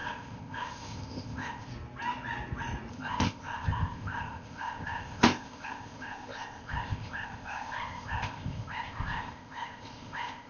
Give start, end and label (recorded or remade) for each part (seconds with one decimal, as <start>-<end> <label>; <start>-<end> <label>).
0.0-1.7 remade; 1.7-2.9 recorded; 2.9-10.5 remade